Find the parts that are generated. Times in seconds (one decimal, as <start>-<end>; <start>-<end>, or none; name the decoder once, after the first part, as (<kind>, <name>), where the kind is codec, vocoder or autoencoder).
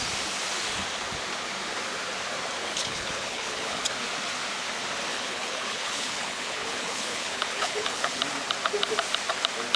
2.6-3.8 (codec, HILCodec); 5.1-8.2